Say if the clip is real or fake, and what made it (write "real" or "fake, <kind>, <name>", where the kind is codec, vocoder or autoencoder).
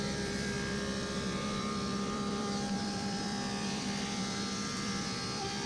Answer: fake, vocoder, BigVGAN v2